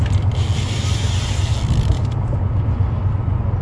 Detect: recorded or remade remade